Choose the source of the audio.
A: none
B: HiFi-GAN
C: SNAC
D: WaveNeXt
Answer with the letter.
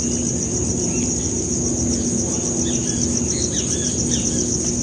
A